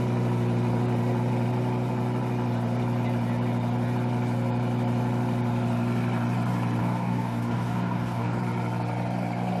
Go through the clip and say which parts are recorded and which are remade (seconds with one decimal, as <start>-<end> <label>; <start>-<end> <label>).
0.0-6.8 recorded; 6.8-8.4 remade; 8.4-9.6 recorded